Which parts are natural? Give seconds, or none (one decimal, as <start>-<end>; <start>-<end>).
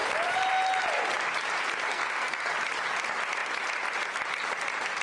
0.0-1.9; 2.5-5.0